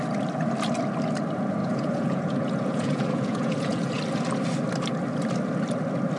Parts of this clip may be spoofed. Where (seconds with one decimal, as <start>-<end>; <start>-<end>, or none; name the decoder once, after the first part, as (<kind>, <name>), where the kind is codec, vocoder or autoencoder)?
1.6-4.0 (vocoder, Vocos)